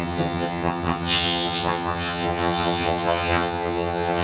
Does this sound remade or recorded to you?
remade